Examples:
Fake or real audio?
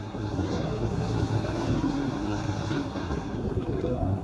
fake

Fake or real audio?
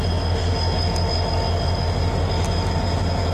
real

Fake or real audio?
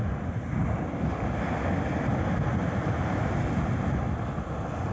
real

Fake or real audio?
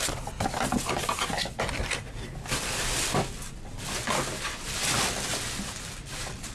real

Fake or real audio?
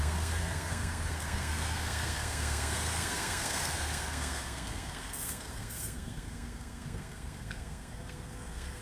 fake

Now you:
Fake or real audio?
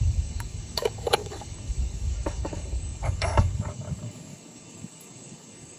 fake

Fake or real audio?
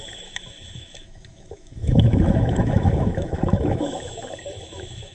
fake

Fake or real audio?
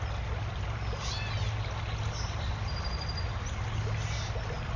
real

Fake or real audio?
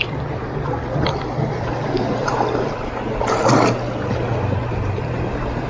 real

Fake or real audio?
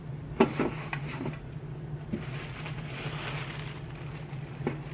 real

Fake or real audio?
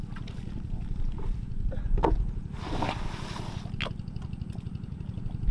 real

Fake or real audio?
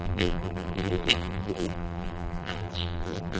fake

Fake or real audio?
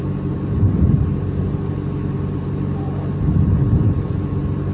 fake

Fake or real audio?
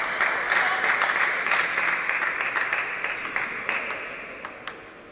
real